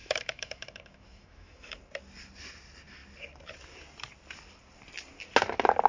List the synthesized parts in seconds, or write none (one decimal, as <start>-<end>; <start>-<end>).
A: 0.0-1.8